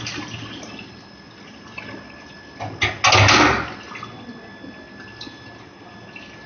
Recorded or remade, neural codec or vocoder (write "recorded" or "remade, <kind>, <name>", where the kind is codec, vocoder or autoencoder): recorded